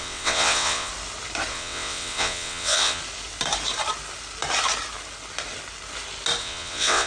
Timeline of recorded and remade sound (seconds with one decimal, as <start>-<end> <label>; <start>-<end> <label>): 0.0-0.9 remade; 0.9-1.5 recorded; 1.5-3.0 remade; 3.0-6.4 recorded; 6.4-7.1 remade